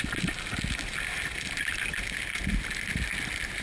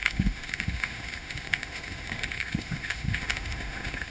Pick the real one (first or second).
first